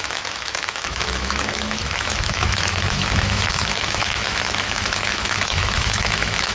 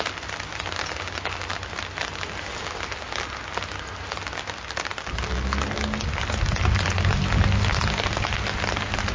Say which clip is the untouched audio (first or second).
second